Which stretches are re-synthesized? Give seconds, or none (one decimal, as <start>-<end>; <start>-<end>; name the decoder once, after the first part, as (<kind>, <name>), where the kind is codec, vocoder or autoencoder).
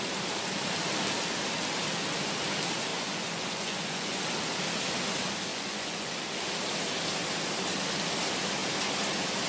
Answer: 2.9-4.2 (vocoder, Vocos); 5.5-6.1